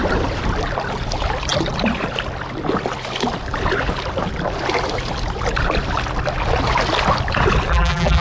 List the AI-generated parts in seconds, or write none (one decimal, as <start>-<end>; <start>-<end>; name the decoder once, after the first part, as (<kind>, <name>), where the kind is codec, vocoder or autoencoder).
7.7-8.2 (vocoder, BigVGAN v2)